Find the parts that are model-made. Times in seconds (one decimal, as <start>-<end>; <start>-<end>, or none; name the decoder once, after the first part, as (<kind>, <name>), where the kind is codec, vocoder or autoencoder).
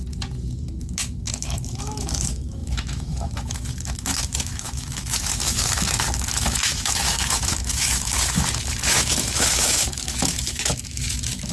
0.8-11.5 (autoencoder, DAC-VAE)